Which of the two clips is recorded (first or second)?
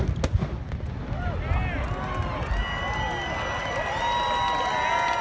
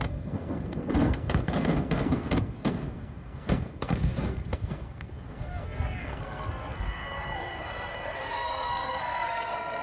first